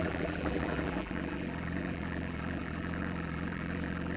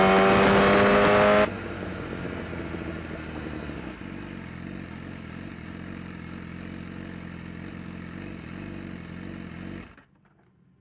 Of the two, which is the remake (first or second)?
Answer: first